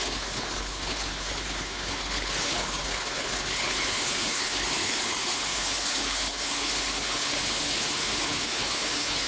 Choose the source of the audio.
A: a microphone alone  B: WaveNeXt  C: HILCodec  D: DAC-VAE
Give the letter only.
C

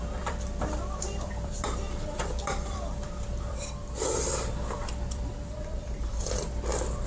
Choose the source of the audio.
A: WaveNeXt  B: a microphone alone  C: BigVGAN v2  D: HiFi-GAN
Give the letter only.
C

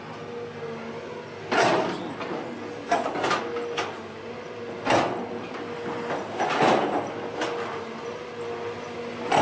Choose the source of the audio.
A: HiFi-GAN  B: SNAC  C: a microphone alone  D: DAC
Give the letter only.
C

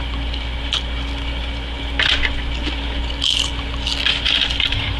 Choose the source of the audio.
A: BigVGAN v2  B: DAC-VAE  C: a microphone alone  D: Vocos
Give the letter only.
C